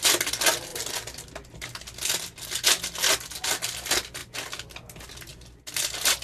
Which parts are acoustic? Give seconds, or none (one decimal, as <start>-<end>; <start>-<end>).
0.0-6.2